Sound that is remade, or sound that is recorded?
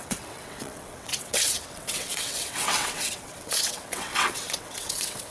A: remade